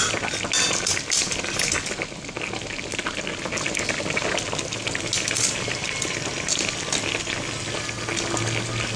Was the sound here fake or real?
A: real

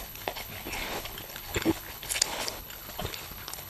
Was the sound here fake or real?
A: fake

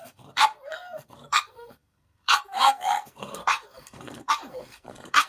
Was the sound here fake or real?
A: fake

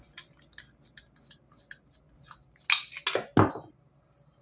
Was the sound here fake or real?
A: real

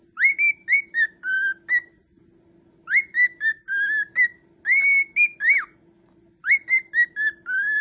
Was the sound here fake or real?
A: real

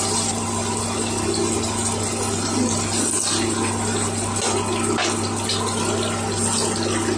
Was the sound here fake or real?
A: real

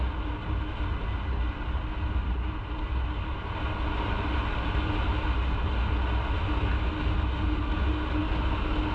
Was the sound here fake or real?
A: real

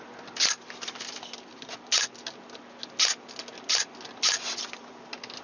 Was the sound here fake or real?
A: real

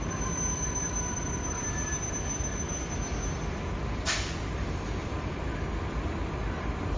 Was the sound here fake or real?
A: fake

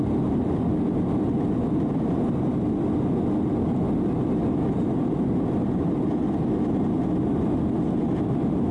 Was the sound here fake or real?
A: real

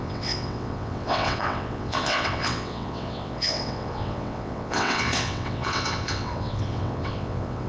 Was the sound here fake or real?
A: fake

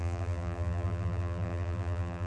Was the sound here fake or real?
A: fake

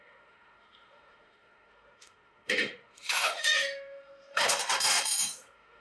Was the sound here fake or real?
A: fake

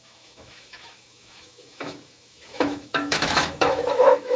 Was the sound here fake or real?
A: fake